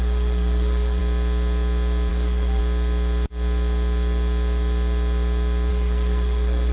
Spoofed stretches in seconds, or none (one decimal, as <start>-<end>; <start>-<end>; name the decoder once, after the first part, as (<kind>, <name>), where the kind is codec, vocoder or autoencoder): 0.0-1.0 (codec, SNAC); 2.1-2.6; 5.7-6.7